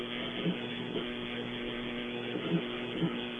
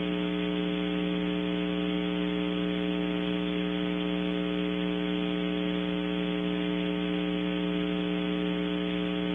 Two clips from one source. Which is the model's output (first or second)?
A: first